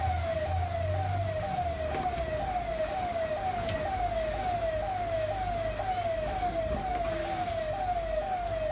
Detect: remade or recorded recorded